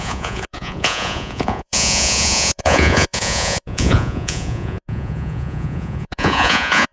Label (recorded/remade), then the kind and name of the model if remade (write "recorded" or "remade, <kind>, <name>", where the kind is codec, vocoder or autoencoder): remade, vocoder, Vocos